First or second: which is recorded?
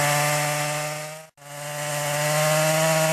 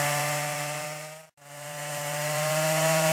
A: first